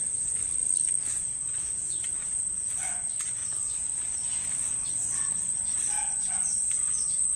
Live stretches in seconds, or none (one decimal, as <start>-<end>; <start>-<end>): 0.4-1.1; 3.4-6.3